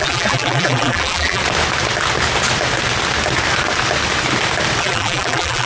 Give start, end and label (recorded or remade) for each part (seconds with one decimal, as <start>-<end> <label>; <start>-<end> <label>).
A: 0.0-1.4 remade; 1.4-4.8 recorded; 4.8-5.7 remade